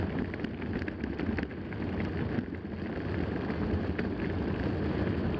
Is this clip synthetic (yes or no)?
no